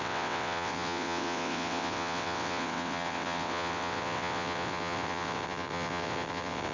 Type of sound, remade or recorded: remade